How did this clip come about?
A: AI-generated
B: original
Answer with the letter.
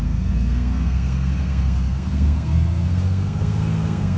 A